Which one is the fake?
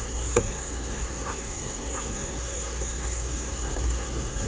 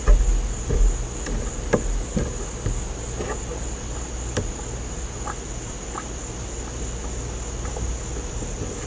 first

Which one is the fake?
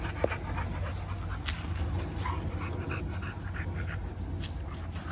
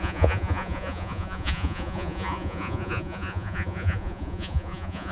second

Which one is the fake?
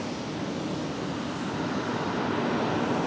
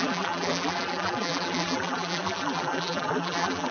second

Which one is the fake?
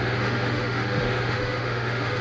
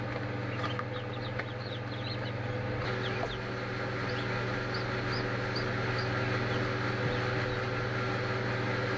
first